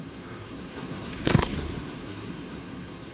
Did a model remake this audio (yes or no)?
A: yes